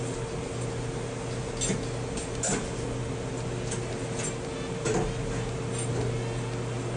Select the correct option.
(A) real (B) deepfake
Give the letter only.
A